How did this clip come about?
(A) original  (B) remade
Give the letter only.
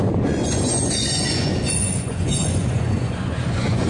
B